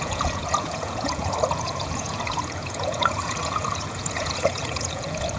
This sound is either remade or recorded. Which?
remade